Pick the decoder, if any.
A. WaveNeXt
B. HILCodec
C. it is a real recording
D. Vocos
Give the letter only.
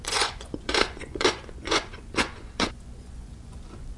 D